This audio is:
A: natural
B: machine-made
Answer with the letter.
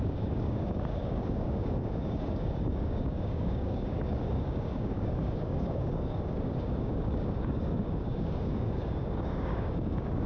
B